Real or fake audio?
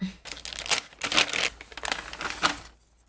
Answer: real